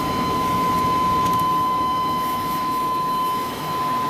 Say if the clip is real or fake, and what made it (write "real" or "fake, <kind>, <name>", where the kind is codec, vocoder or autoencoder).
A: fake, autoencoder, DAC-VAE